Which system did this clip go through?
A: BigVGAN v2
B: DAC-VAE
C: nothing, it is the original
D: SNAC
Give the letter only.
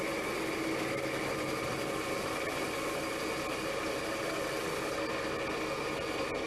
C